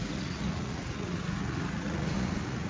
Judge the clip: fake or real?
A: fake